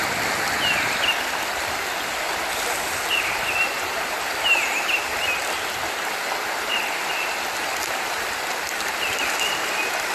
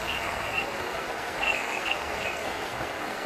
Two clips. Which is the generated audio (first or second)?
second